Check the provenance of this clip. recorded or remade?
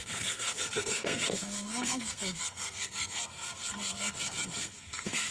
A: remade